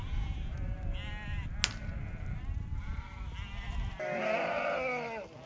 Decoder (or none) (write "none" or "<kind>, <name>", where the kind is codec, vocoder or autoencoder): none